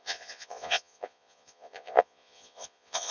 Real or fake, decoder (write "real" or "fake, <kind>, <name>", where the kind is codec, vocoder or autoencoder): fake, vocoder, Vocos